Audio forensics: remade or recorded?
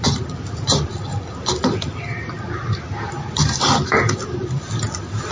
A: remade